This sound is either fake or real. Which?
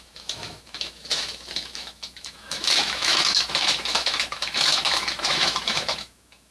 fake